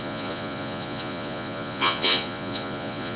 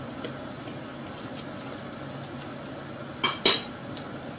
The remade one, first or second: first